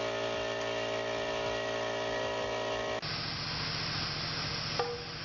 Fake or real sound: real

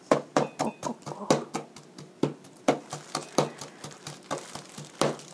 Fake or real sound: real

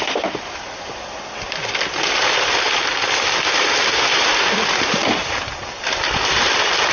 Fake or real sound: real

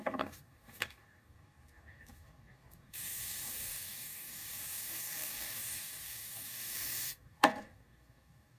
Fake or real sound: fake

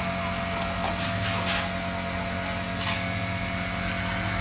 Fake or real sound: real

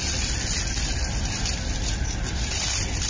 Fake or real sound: real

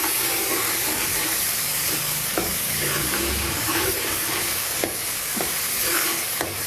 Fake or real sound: fake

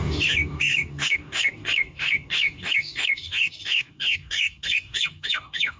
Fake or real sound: fake